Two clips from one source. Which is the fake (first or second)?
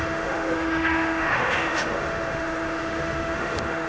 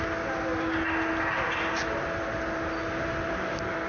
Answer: first